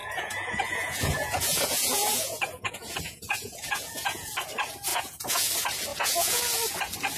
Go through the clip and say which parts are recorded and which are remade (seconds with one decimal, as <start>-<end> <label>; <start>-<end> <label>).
0.0-4.3 remade; 4.3-4.9 recorded; 4.9-5.5 remade; 5.5-5.9 recorded; 5.9-6.4 remade; 6.4-7.2 recorded